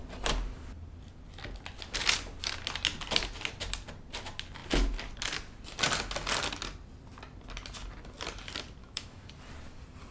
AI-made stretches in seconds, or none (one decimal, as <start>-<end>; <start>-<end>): 8.8-9.3